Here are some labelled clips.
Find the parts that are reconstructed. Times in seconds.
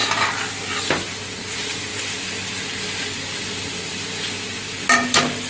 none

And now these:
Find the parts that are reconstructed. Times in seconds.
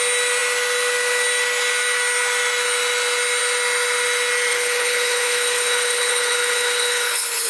4.5-7.5 (codec, HILCodec)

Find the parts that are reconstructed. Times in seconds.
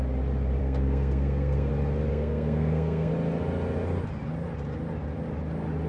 0.6-1.7 (codec, SNAC); 2.1-3.1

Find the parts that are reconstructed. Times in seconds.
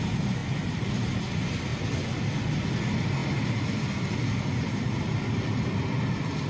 none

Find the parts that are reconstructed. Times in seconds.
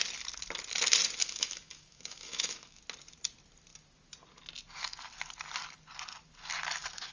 1.2-2.8 (autoencoder, DAC-VAE)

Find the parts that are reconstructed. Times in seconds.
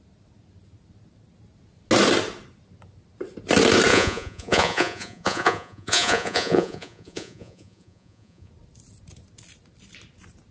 3.9-8.5 (vocoder, Vocos)